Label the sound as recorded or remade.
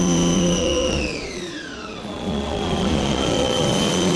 remade